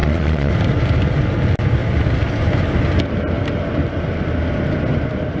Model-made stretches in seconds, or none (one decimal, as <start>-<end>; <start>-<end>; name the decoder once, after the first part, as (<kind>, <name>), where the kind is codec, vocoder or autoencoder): 0.0-0.5 (vocoder, Vocos)